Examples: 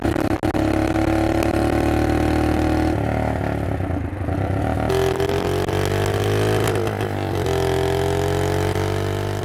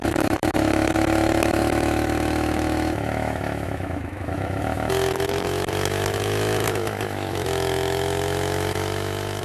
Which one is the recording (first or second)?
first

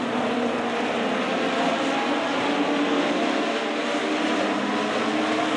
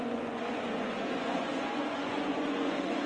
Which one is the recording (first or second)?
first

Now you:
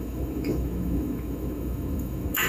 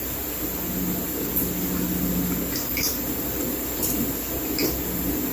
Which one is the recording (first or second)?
second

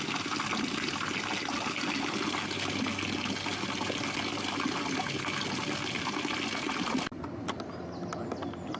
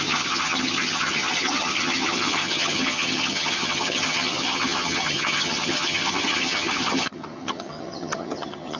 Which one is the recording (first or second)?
first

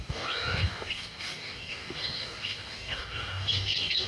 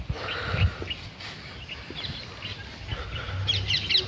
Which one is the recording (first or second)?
second